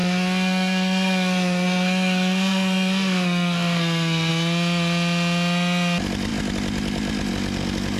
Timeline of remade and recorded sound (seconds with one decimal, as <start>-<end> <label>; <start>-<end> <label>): 0.0-4.3 remade; 4.3-8.0 recorded

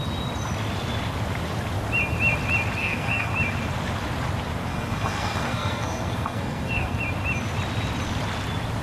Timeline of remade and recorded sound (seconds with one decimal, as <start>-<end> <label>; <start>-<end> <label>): 0.0-2.8 recorded; 2.8-3.3 remade; 3.3-4.7 recorded; 4.7-7.0 remade; 7.0-8.8 recorded

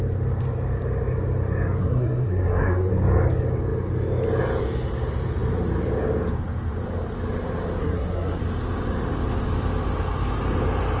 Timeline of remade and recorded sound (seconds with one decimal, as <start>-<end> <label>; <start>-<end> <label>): 0.0-1.8 recorded; 1.8-2.9 remade; 2.9-7.8 recorded; 7.8-8.4 remade; 8.4-11.0 recorded

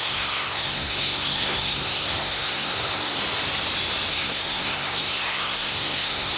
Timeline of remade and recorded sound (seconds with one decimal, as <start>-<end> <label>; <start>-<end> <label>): 0.0-3.2 remade; 3.2-4.1 recorded; 4.1-6.4 remade

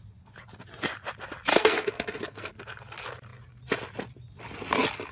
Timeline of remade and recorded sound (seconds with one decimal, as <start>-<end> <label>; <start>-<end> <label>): 0.0-1.5 recorded; 1.5-2.5 remade; 2.5-5.1 recorded

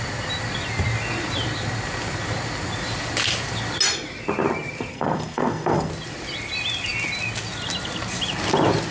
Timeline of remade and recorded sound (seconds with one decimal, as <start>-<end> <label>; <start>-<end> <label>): 0.0-4.9 recorded; 4.9-5.9 remade; 5.9-8.9 recorded

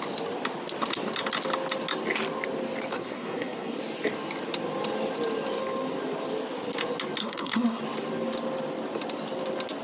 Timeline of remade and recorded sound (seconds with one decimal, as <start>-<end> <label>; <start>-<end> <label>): 0.0-2.9 recorded; 2.9-3.8 remade; 3.8-7.2 recorded; 7.2-7.8 remade; 7.8-9.8 recorded